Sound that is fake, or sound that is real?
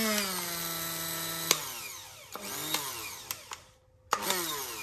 real